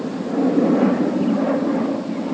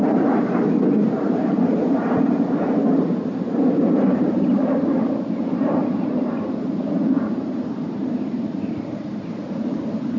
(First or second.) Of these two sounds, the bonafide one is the first